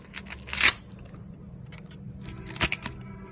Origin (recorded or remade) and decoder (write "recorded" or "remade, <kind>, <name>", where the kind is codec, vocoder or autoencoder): recorded